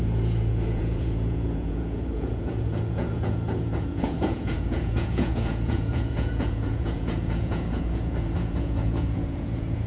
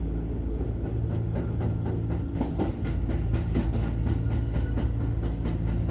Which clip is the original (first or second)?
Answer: second